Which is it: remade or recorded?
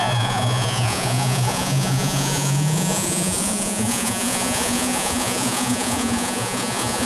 remade